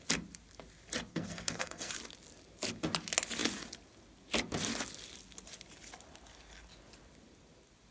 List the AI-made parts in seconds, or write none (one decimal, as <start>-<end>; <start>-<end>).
1.1-1.9